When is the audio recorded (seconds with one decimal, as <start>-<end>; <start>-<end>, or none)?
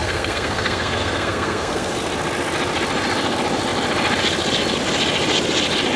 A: 1.9-6.0